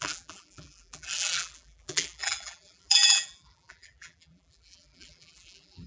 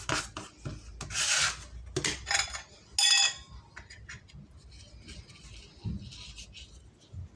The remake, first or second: first